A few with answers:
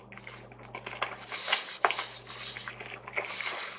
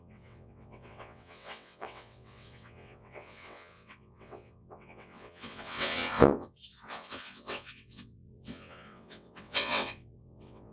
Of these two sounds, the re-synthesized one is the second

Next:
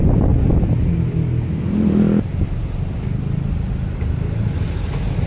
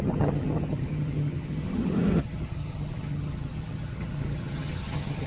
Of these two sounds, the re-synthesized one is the second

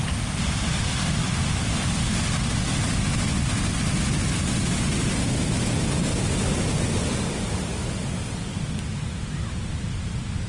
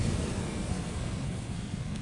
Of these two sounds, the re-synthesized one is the second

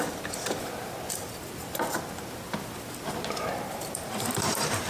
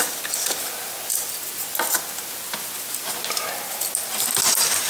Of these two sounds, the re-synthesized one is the first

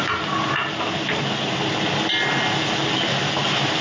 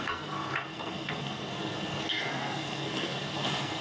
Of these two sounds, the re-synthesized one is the second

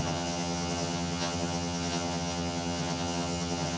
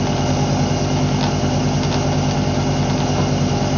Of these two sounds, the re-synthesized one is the first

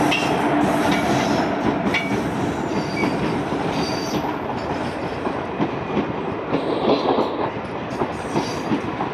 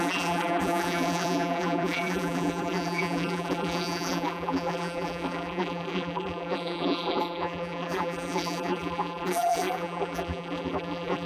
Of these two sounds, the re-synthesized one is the second